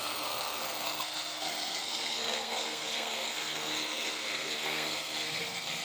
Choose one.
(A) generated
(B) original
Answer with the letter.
A